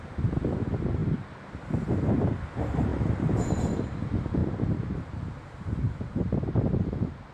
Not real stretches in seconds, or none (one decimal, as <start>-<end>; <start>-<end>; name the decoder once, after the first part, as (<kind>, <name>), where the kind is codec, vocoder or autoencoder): 1.0-1.5 (vocoder, BigVGAN v2); 2.9-3.7; 4.4-7.3